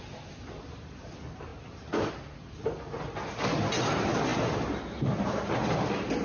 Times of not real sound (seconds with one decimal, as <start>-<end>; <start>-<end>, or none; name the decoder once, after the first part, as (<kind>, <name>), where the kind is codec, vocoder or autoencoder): none